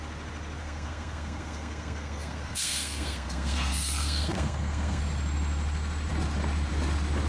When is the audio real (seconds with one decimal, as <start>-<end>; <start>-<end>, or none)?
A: 0.0-0.6; 5.0-7.3